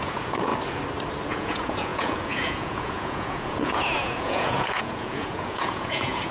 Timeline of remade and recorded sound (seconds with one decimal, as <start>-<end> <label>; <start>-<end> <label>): 0.0-0.5 remade; 0.5-1.3 recorded; 1.3-6.3 remade